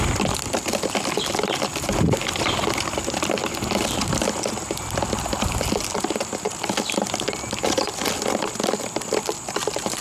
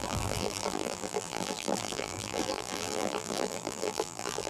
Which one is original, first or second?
first